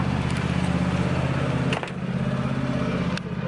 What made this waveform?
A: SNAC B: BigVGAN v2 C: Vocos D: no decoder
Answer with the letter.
D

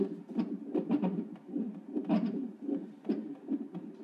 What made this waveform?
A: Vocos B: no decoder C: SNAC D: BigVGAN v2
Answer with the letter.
B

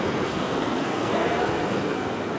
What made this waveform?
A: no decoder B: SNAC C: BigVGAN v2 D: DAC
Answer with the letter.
B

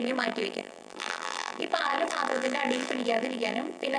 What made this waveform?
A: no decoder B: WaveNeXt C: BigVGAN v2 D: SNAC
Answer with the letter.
C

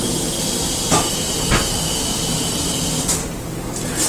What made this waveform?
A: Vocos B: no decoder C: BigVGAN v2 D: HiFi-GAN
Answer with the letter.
B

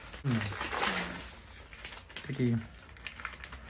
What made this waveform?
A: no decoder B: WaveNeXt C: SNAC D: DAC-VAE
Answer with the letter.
A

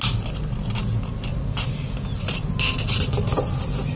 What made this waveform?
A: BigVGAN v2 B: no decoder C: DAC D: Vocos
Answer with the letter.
B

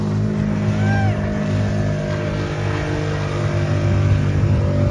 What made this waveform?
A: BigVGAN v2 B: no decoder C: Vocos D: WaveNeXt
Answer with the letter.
B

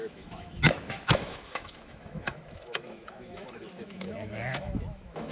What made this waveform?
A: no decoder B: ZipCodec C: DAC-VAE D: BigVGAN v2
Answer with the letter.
C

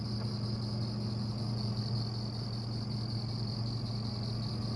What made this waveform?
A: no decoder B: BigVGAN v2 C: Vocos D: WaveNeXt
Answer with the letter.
A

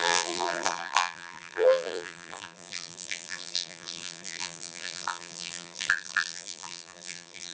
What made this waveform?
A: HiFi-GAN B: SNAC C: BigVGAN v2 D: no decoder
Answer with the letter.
C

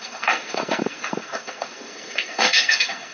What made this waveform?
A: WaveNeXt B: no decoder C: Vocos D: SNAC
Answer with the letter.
D